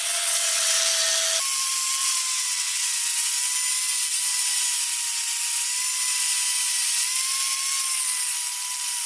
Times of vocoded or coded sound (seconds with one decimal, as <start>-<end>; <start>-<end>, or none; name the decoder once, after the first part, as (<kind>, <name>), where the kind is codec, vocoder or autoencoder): 0.0-0.8 (vocoder, WaveNeXt); 2.0-3.3